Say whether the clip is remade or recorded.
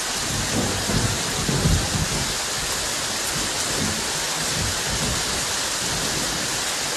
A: recorded